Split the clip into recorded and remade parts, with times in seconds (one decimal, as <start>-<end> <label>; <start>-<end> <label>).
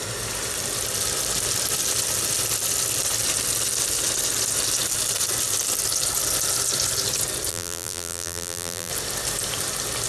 0.0-7.5 recorded; 7.5-8.9 remade; 8.9-10.1 recorded